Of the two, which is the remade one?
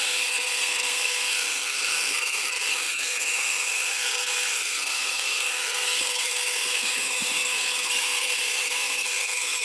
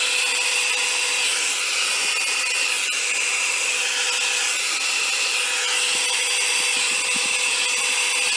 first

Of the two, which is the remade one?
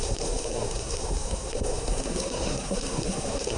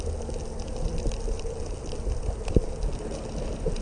first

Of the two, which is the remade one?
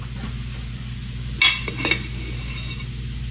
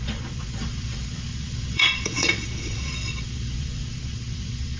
second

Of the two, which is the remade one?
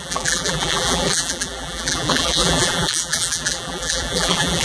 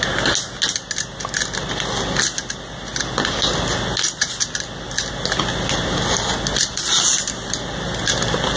first